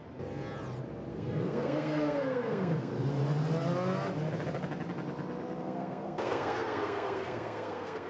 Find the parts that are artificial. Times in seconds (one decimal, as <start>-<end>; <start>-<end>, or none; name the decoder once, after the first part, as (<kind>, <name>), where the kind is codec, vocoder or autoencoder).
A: 1.1-2.9 (codec, SNAC); 5.6-8.1